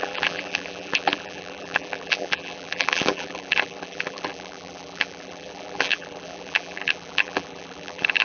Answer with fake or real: fake